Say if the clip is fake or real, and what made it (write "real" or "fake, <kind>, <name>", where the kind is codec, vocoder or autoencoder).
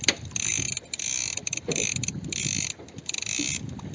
real